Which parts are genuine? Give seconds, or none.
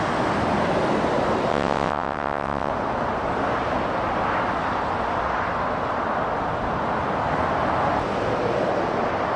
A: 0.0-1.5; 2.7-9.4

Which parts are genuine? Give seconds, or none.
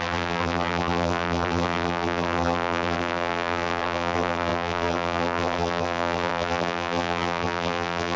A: none